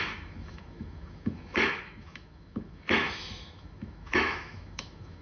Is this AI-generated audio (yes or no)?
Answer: yes